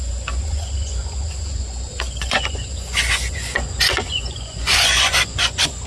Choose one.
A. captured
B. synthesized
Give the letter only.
B